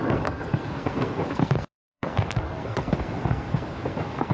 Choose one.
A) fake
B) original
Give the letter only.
A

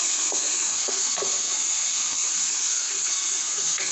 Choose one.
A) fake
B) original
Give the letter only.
A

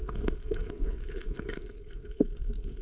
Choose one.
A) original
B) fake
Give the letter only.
B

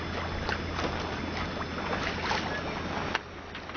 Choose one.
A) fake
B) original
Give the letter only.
B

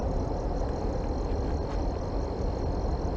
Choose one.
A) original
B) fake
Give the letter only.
A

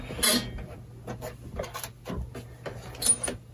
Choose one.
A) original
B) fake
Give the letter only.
A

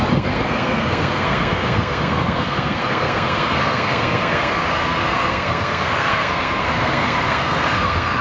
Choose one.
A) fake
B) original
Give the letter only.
A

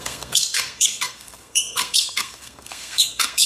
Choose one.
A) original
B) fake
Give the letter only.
B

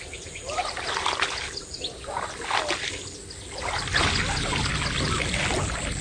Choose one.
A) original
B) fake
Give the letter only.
A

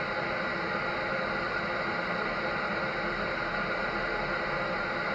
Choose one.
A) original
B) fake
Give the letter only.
A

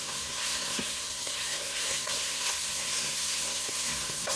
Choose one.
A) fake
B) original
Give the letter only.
A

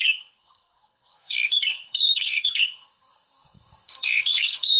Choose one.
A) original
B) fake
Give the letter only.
B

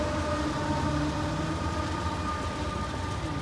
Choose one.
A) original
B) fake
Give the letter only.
A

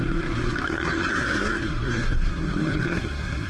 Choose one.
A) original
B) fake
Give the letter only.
B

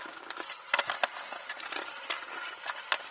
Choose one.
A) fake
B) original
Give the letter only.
B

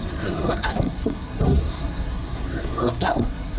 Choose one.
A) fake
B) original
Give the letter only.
A